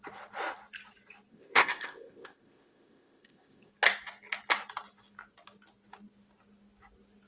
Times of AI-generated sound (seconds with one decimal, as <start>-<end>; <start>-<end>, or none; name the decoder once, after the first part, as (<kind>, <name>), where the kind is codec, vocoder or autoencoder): 1.3-3.7 (codec, ZipCodec)